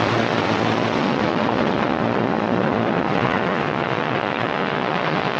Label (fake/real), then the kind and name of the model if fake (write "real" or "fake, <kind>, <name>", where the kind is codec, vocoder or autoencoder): fake, vocoder, Vocos